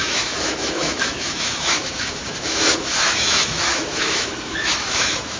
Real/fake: fake